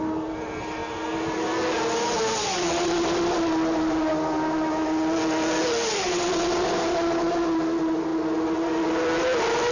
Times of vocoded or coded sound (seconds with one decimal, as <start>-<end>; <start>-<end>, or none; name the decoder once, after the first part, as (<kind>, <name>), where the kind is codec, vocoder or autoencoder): none